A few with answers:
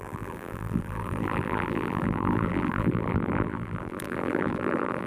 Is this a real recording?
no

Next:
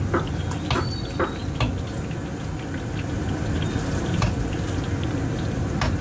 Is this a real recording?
yes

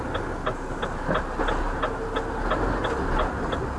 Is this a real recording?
yes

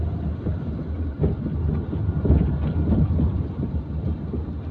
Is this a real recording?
yes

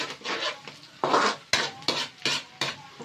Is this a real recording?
yes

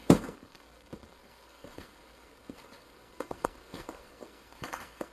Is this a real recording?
no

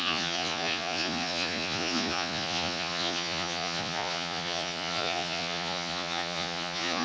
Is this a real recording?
no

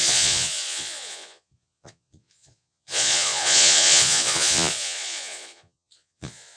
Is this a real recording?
no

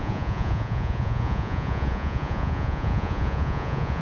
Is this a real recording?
no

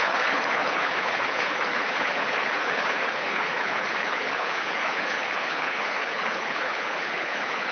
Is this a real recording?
no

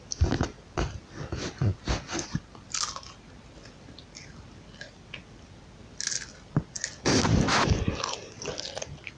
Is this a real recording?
yes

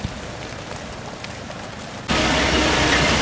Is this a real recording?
yes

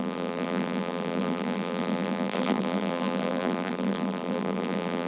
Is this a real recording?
no